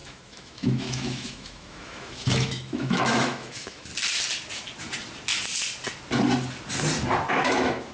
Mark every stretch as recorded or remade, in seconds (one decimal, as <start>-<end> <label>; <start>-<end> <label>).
0.0-3.9 remade; 3.9-7.3 recorded; 7.3-7.9 remade